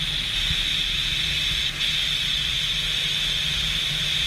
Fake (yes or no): no